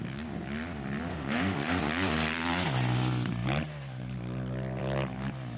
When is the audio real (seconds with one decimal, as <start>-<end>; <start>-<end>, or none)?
0.0-1.1; 1.8-5.6

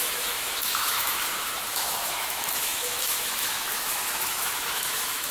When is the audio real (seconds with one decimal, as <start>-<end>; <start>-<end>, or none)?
none

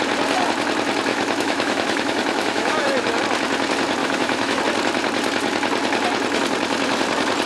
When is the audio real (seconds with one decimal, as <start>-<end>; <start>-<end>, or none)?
0.0-1.1; 3.2-4.0; 4.6-7.5

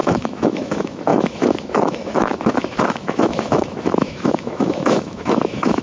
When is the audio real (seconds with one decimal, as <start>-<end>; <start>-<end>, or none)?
none